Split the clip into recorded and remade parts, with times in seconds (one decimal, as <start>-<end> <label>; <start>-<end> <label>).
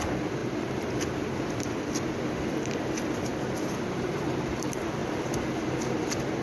0.0-3.3 remade; 3.3-4.1 recorded; 4.1-5.0 remade; 5.0-6.4 recorded